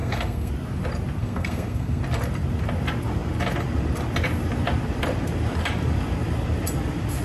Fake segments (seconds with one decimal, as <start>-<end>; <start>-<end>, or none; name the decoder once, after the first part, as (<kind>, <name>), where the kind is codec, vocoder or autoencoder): 0.0-0.5 (codec, SNAC); 1.2-2.0